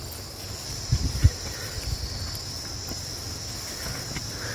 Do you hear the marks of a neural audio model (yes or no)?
no